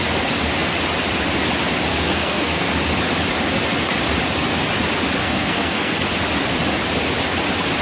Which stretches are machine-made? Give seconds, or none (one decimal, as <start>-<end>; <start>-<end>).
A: 1.9-2.7; 5.2-6.0